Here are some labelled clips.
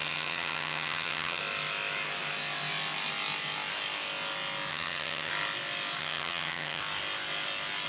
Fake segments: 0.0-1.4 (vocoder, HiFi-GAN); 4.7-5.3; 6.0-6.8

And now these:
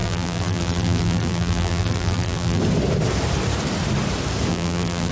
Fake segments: 0.0-2.6 (vocoder, BigVGAN v2); 4.5-5.1

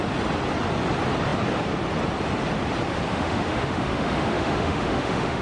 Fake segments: 3.1-5.4 (autoencoder, DAC-VAE)

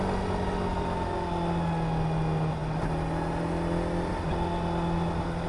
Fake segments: none

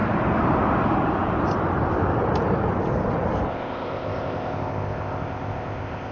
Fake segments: 3.5-6.1 (codec, ZipCodec)